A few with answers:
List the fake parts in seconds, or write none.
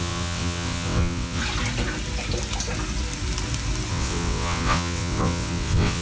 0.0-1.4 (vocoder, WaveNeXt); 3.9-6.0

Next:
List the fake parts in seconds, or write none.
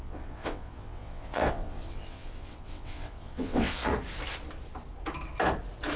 0.0-3.9 (vocoder, WaveNeXt)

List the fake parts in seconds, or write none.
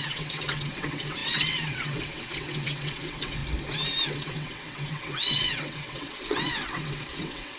0.0-3.4 (vocoder, WaveNeXt); 4.1-7.6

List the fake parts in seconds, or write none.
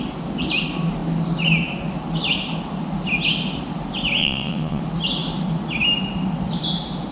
4.2-4.8 (vocoder, WaveNeXt)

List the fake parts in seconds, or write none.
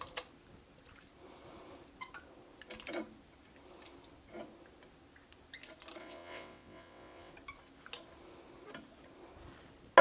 6.0-7.3 (vocoder, WaveNeXt)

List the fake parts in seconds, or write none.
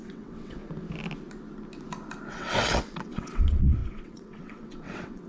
0.0-0.6 (vocoder, WaveNeXt); 2.3-5.3